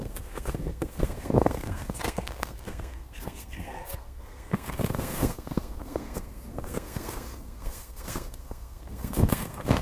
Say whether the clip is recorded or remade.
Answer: remade